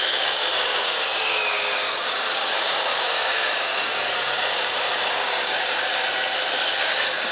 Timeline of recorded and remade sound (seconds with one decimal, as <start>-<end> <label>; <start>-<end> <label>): 0.0-5.9 remade; 5.9-6.6 recorded; 6.6-7.3 remade